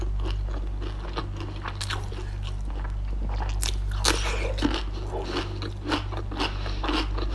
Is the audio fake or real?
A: real